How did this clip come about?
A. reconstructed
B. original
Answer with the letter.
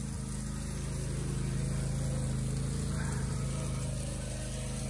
B